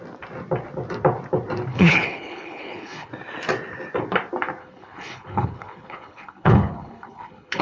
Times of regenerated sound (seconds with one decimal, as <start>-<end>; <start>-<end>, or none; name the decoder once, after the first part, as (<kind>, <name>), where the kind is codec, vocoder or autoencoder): 1.7-3.1 (codec, HILCodec); 4.6-7.6

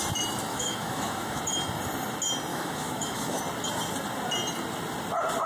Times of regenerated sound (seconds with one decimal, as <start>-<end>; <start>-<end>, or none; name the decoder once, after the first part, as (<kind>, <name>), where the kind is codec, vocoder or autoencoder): 0.5-1.4 (autoencoder, DAC-VAE); 2.5-3.4

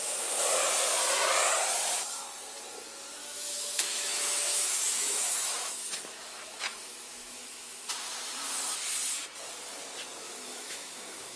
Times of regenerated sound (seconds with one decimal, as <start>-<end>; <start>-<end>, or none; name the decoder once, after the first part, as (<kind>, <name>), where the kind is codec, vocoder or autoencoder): 3.2-7.9 (autoencoder, DAC-VAE); 10.2-11.4

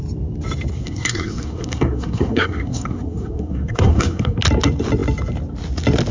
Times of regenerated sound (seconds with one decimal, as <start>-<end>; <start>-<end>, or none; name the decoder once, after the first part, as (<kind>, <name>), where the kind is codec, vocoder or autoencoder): 0.7-4.4 (codec, SNAC)

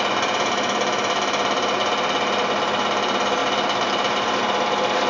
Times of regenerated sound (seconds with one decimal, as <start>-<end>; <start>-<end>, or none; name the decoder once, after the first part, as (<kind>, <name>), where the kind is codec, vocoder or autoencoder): none

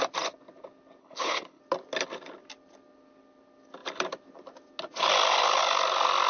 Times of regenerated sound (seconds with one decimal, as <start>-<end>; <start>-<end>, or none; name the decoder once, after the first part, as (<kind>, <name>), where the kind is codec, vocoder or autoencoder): 1.0-1.6 (codec, HILCodec)